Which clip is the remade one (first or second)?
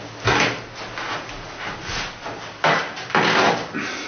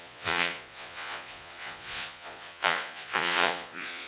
second